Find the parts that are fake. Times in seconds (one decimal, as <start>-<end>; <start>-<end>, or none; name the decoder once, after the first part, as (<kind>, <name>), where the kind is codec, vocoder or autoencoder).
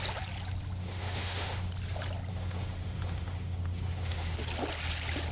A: 0.8-1.7 (autoencoder, DAC-VAE); 2.3-4.4